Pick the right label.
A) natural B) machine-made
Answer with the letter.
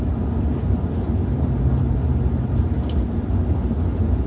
A